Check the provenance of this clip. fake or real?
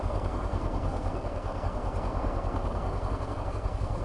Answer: fake